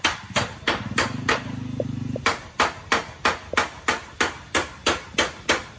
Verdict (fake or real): real